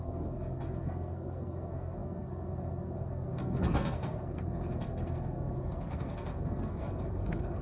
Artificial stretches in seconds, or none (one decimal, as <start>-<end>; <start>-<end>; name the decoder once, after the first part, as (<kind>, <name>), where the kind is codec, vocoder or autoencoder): 0.0-7.6 (codec, SNAC)